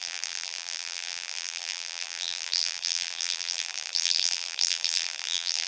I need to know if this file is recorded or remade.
remade